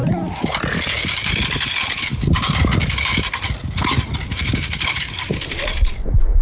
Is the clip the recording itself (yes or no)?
yes